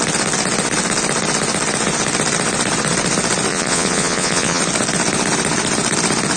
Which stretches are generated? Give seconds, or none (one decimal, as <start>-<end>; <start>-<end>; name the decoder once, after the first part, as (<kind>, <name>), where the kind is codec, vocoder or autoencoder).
3.5-4.6 (vocoder, Vocos)